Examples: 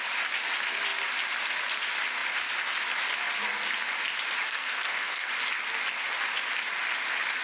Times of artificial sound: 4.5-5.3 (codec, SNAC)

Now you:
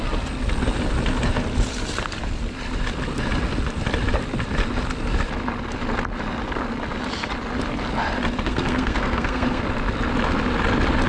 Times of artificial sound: 8.5-9.6 (codec, SNAC)

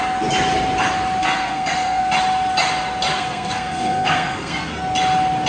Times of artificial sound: 1.2-2.0 (codec, SNAC); 3.1-4.8

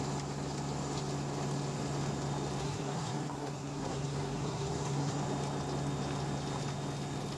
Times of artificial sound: 2.6-5.2 (codec, SNAC)

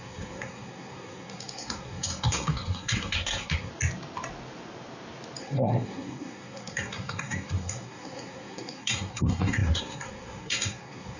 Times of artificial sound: 0.0-3.7 (codec, SNAC); 5.4-11.2

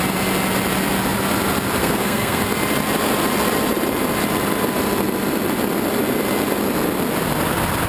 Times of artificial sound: 1.8-2.4 (codec, SNAC)

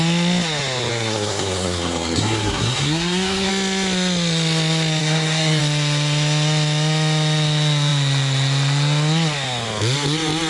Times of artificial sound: 0.9-3.5 (codec, SNAC); 5.0-5.6

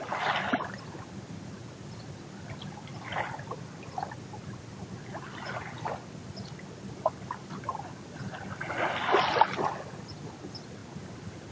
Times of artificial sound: none